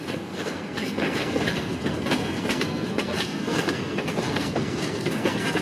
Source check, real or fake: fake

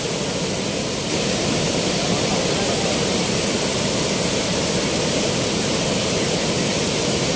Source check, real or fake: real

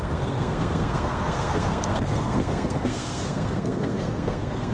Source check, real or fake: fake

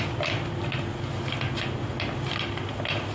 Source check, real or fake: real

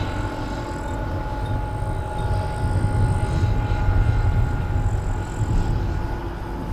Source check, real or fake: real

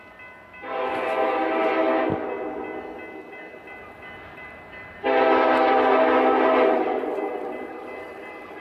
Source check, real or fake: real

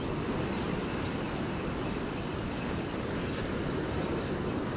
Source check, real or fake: real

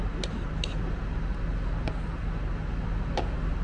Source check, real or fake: real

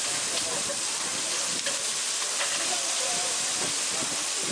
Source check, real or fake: real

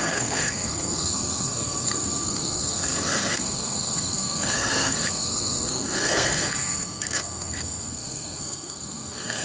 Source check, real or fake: fake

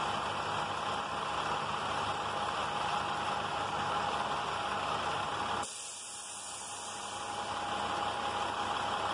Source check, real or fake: real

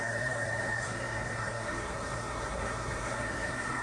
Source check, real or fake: fake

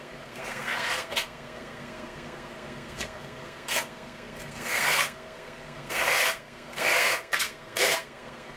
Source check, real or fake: fake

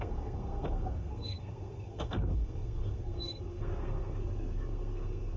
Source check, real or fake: fake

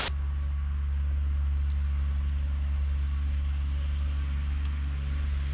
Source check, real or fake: real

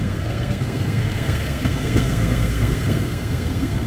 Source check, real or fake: fake